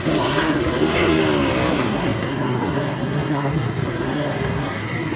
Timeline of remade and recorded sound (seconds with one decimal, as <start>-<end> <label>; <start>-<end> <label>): 0.0-1.2 remade; 1.2-1.7 recorded; 1.7-5.2 remade